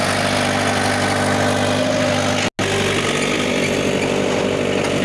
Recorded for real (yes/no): yes